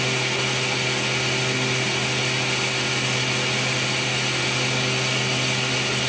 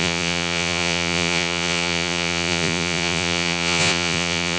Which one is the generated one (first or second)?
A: second